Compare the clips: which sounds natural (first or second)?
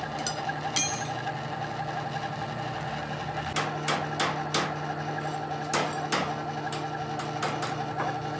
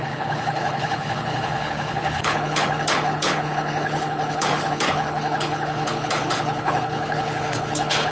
first